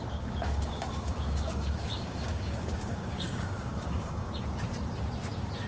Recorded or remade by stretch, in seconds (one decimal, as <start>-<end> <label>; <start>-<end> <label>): 0.0-4.3 remade; 4.3-5.7 recorded